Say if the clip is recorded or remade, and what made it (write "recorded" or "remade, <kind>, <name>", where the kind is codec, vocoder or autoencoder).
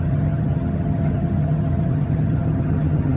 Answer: remade, vocoder, HiFi-GAN